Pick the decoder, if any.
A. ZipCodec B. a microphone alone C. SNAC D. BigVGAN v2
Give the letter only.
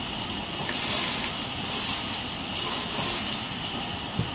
B